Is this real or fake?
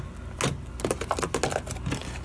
real